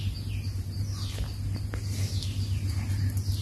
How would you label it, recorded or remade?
recorded